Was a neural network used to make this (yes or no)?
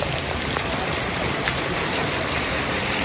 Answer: yes